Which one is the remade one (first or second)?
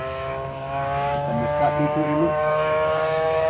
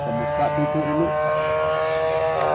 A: first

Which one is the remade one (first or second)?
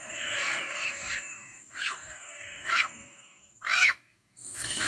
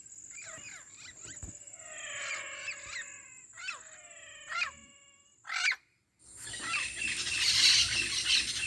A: first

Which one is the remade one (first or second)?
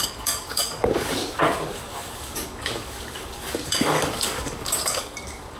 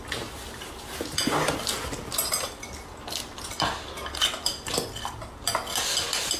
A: first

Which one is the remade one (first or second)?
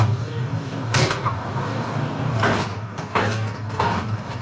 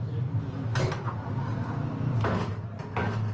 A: first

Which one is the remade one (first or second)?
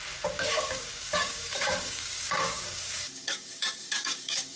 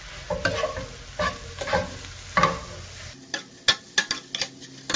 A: first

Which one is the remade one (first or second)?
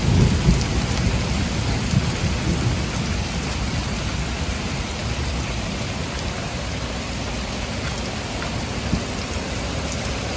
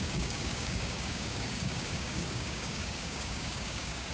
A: second